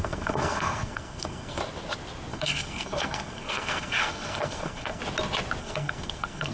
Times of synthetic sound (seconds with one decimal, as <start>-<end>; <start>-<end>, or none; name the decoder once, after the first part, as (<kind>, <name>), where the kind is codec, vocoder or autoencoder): 0.0-1.6 (codec, SNAC); 2.3-5.0; 5.6-6.5